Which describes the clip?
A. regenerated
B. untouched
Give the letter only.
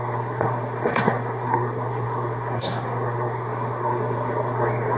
A